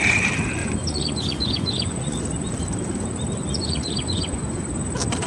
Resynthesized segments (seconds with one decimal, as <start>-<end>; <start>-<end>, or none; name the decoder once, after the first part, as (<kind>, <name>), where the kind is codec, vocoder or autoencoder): 0.6-2.2 (vocoder, Vocos); 3.4-4.6